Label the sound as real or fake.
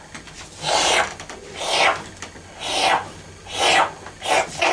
real